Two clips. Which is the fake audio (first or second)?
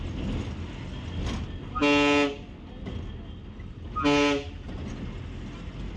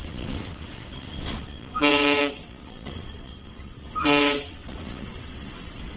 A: second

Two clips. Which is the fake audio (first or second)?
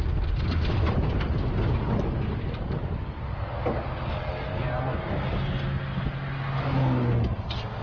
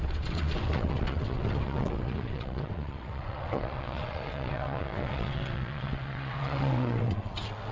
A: second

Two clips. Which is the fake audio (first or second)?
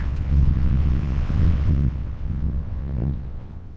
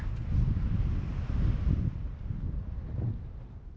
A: first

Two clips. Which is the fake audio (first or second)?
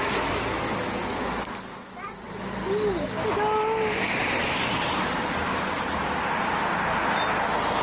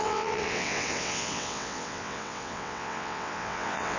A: second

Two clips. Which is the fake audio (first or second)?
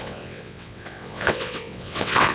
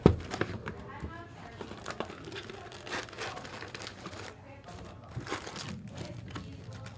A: first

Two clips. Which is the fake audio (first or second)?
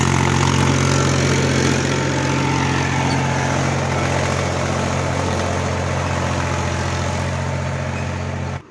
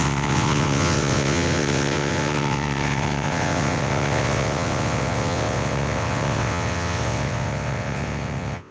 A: second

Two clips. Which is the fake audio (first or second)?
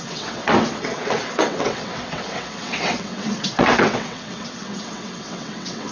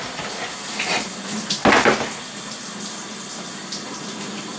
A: first